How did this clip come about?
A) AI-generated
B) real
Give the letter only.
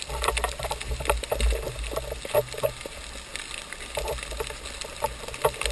B